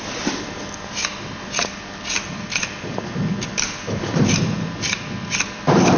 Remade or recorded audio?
recorded